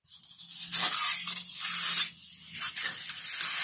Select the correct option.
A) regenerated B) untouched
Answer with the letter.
B